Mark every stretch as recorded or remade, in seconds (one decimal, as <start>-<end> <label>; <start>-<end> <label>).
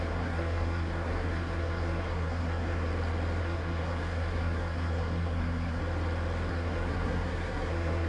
0.0-2.9 remade; 2.9-3.4 recorded; 3.4-5.8 remade; 5.8-6.5 recorded; 6.5-8.1 remade